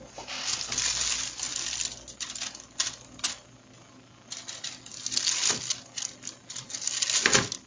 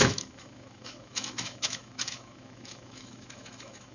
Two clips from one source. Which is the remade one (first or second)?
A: second